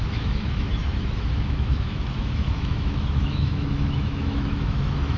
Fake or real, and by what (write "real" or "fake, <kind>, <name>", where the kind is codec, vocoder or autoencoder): fake, autoencoder, DAC-VAE